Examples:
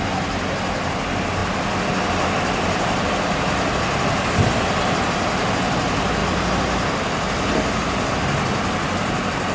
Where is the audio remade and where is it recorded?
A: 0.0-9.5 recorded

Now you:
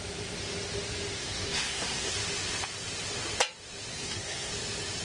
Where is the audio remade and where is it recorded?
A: 0.0-1.2 recorded; 1.2-2.1 remade; 2.1-3.9 recorded; 3.9-4.5 remade; 4.5-5.0 recorded